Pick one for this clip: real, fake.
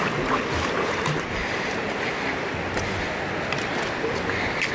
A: real